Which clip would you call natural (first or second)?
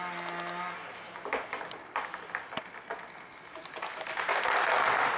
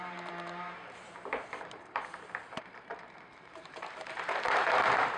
first